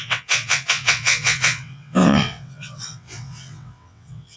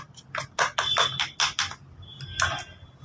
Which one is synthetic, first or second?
first